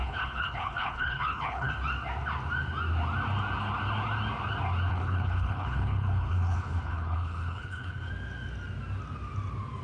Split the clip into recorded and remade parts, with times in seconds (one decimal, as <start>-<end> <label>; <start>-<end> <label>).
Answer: 0.0-1.7 remade; 1.7-4.9 recorded; 4.9-8.1 remade; 8.1-9.8 recorded